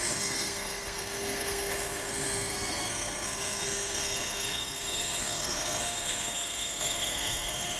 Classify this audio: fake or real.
fake